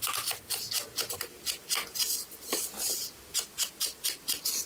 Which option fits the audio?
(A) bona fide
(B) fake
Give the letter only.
A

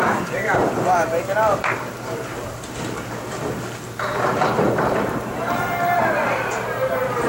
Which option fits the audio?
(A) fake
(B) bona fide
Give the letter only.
A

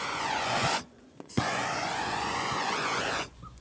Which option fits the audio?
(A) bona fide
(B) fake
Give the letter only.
B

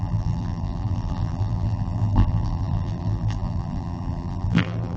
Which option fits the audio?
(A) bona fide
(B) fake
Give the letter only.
B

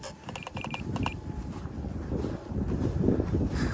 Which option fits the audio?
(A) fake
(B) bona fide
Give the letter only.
B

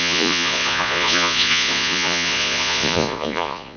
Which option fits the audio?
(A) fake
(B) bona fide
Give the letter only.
A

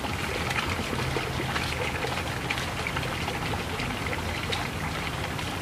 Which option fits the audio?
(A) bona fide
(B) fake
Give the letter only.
A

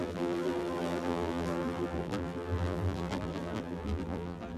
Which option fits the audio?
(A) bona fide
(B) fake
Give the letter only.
B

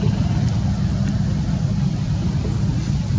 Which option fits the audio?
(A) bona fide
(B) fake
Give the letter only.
A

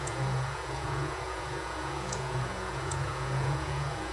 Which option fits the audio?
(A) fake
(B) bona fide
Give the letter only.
A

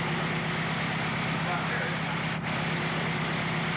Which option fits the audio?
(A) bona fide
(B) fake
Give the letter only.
A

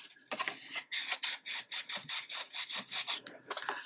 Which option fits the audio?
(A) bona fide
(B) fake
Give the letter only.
A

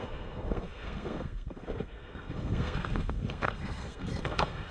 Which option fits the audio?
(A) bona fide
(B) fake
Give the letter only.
B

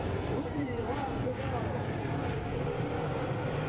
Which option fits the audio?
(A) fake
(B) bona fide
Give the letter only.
A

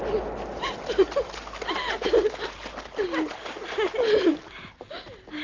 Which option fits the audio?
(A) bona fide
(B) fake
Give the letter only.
A